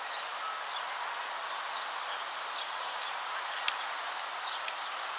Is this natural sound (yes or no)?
yes